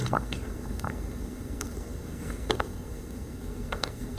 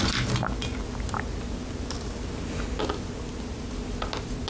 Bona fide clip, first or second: second